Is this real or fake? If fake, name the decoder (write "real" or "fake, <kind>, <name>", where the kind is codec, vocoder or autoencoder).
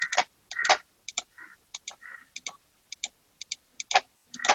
fake, vocoder, BigVGAN v2